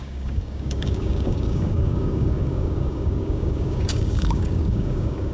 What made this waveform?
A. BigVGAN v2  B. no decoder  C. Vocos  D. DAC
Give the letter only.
D